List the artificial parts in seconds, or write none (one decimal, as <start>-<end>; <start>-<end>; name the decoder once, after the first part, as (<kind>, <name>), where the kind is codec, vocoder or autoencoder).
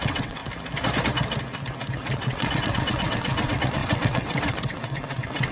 0.0-0.4 (vocoder, WaveNeXt); 2.1-5.5